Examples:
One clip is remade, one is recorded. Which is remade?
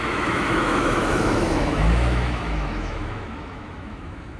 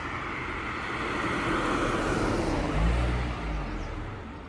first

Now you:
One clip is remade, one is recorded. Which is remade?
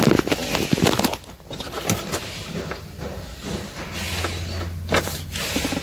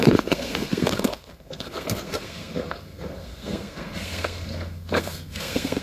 second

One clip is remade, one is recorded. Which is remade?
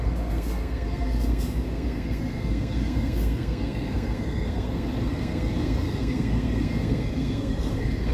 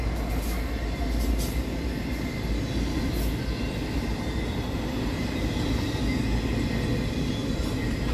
first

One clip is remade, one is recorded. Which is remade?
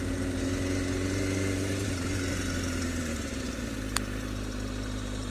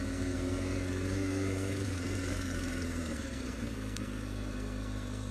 second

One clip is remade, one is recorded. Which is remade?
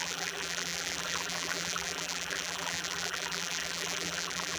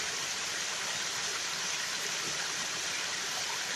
first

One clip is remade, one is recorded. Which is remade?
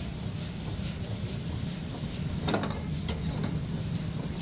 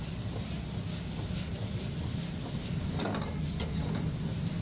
first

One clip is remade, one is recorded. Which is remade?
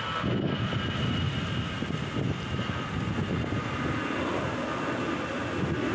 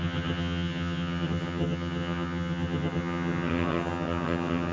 second